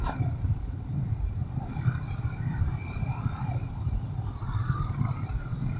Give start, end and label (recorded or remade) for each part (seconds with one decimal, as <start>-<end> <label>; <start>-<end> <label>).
0.0-5.8 remade

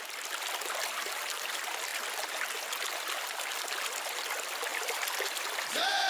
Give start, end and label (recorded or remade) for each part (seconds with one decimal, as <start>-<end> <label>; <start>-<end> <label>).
0.0-4.7 recorded; 4.7-6.1 remade

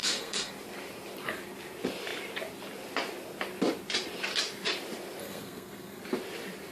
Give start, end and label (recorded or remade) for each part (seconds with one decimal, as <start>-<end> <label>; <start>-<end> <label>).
0.0-0.5 remade; 0.5-5.2 recorded; 5.2-6.0 remade; 6.0-6.7 recorded

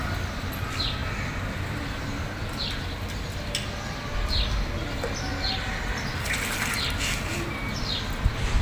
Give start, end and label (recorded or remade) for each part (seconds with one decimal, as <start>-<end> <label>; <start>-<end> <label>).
0.0-8.6 recorded

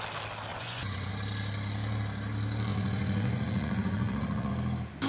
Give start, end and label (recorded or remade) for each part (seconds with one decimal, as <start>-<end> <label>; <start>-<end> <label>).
0.0-0.5 recorded; 0.5-1.1 remade; 1.1-2.7 recorded; 2.7-4.5 remade; 4.5-5.1 recorded

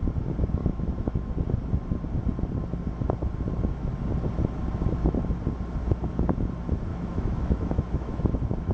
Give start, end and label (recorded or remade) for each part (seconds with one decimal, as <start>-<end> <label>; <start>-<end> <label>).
0.0-0.6 recorded; 0.6-1.3 remade; 1.3-6.9 recorded; 6.9-8.2 remade; 8.2-8.7 recorded

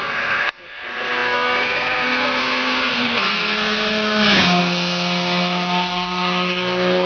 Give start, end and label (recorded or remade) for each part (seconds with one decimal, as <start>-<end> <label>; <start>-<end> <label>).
0.0-7.1 remade

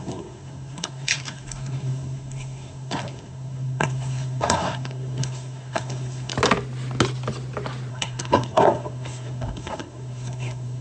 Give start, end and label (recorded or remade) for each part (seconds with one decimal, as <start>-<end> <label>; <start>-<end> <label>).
0.0-6.3 remade; 6.3-7.9 recorded; 7.9-10.8 remade